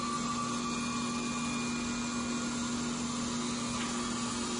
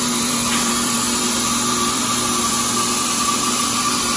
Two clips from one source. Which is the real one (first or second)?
first